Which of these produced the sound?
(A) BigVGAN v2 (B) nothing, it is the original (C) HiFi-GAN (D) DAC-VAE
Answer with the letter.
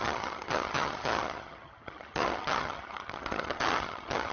C